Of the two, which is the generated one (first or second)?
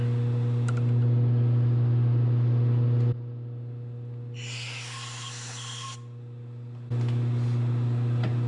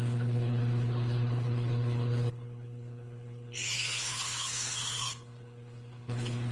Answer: second